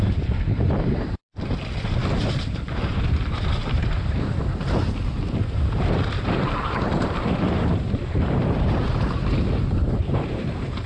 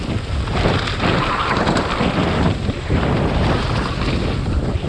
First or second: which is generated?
first